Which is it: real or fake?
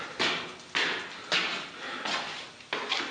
real